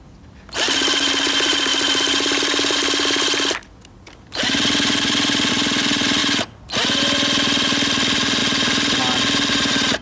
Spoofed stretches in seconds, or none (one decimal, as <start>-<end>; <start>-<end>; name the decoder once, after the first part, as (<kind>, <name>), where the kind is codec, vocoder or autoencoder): none